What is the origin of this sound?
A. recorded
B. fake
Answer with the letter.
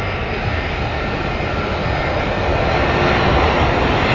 A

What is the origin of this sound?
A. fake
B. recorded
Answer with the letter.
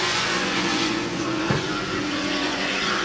A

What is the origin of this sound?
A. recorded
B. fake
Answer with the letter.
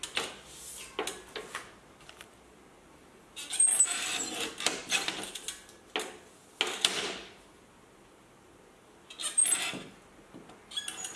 A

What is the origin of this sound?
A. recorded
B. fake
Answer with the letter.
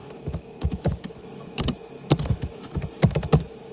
B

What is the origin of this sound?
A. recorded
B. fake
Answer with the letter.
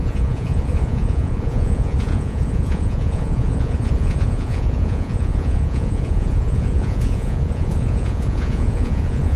B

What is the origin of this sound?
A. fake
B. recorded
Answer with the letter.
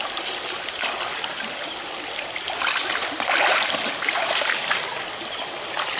B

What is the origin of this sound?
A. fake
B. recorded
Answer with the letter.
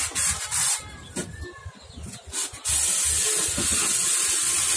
B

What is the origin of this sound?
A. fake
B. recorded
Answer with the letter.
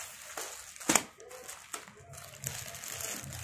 B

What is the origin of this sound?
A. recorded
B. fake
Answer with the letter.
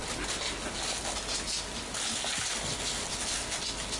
A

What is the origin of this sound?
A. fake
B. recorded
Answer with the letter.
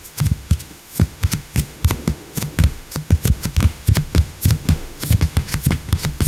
A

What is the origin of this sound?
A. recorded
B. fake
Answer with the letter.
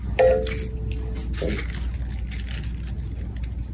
A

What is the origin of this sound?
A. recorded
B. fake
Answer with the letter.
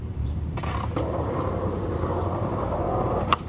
B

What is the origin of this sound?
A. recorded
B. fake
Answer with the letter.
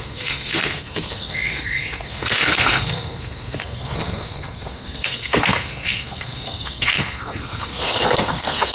B